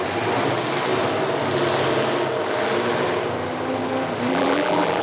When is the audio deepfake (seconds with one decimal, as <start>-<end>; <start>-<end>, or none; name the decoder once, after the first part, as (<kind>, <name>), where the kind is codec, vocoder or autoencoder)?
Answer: 4.3-5.0 (vocoder, BigVGAN v2)